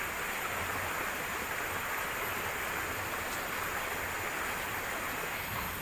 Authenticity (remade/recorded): recorded